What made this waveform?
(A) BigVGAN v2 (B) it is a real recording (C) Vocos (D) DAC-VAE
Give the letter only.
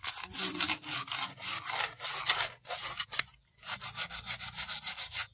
B